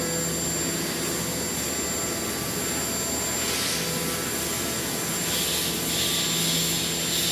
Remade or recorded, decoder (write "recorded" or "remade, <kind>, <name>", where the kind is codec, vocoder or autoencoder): recorded